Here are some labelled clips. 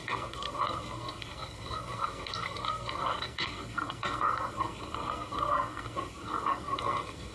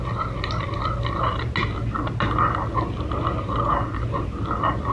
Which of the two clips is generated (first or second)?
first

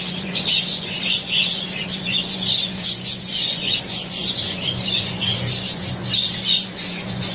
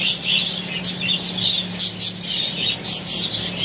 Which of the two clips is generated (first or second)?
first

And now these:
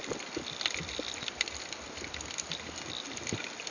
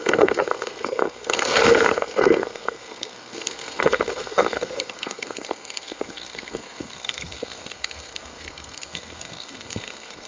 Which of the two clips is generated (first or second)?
second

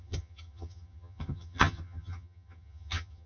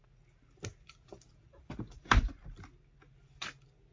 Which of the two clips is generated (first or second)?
first